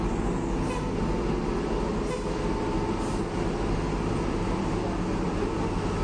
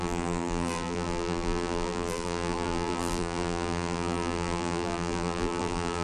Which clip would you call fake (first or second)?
second